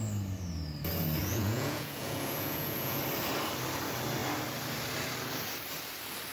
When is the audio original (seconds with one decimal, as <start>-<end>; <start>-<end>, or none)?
0.0-1.2; 3.0-6.3